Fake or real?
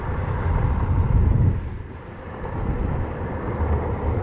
fake